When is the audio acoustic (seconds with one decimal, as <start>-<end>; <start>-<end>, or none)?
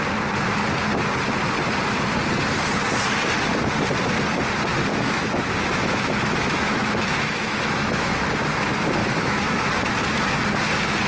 0.0-4.9; 8.2-9.0; 9.7-11.1